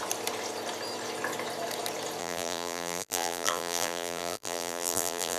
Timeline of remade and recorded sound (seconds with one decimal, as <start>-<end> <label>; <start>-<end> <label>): 0.0-2.2 recorded; 2.2-5.4 remade